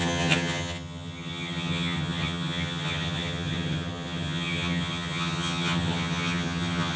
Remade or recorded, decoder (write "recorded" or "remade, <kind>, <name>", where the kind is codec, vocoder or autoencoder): remade, vocoder, HiFi-GAN